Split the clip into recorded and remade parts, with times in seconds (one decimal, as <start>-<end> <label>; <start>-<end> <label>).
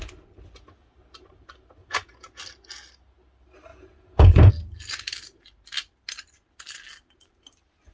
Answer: 0.0-1.8 recorded; 1.8-2.4 remade; 2.4-3.7 recorded; 3.7-4.5 remade; 4.5-7.9 recorded